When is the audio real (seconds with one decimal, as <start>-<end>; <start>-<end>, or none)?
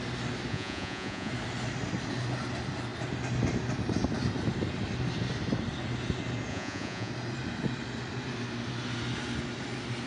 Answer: 0.0-0.5; 1.3-6.5; 7.1-10.1